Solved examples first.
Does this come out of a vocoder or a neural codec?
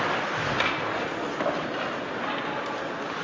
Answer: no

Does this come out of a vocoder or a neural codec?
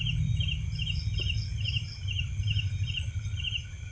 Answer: no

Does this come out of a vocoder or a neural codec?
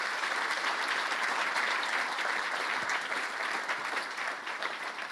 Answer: yes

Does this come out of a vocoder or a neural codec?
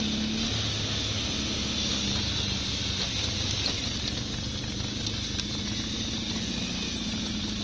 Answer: no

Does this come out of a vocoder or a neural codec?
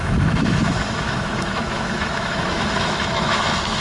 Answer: yes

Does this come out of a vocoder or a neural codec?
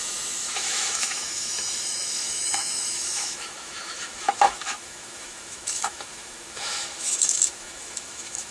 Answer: yes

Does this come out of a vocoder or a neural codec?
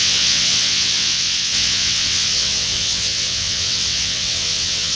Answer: yes